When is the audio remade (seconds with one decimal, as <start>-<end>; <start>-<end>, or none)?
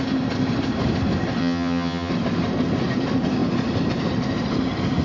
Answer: 1.4-2.1